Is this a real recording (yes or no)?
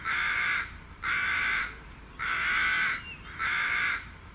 yes